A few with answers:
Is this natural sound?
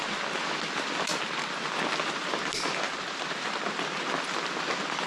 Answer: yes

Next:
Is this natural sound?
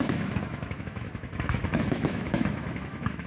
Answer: no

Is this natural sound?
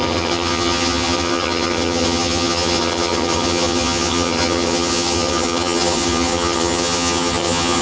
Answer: no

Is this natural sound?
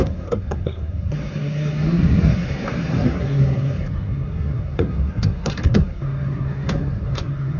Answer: no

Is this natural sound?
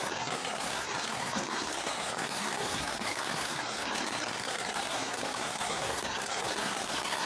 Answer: no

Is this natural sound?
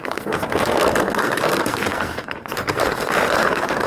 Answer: no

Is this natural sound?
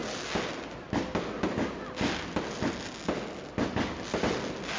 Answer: yes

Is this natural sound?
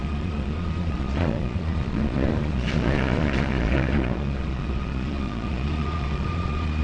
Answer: no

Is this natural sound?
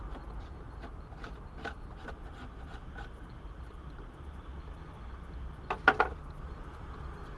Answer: yes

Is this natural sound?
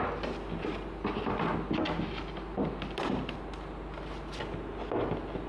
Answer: yes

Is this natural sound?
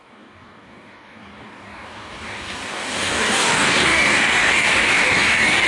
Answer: no